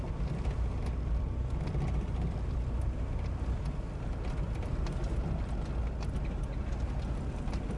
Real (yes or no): yes